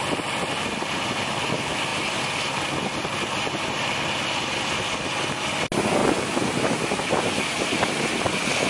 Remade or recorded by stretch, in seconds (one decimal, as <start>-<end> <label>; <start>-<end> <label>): 0.0-8.7 recorded